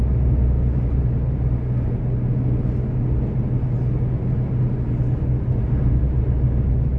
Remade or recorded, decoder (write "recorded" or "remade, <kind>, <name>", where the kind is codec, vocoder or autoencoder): recorded